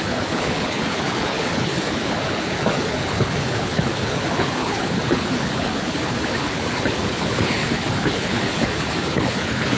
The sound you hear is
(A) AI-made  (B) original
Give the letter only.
A